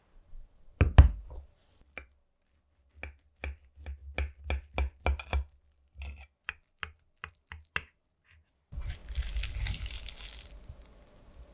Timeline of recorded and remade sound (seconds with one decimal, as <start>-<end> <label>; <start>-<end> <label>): 0.0-11.5 recorded